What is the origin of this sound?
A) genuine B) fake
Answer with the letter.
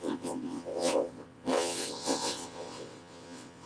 B